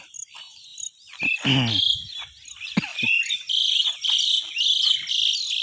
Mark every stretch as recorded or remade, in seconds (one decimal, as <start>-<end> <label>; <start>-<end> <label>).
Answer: 0.0-5.6 recorded